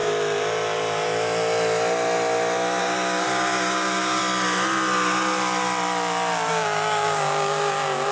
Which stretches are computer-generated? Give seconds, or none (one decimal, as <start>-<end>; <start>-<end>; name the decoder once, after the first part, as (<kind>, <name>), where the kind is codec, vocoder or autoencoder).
2.8-4.2 (codec, DAC); 6.5-8.1